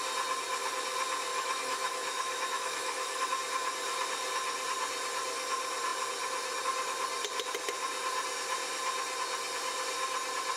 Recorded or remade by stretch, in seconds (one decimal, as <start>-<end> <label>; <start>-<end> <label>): 0.0-1.3 recorded; 1.3-3.3 remade; 3.3-10.6 recorded